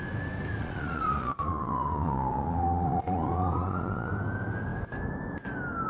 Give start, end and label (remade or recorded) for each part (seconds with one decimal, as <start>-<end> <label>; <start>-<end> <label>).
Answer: 0.0-0.6 recorded; 0.6-4.1 remade; 4.1-5.9 recorded